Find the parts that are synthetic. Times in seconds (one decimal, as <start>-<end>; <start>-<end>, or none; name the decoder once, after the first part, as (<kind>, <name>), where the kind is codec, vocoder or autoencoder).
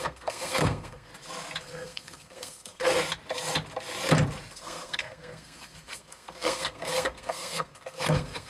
0.0-1.1 (codec, SNAC); 1.6-2.9; 4.5-8.5